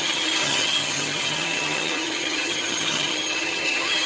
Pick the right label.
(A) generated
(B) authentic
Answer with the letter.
A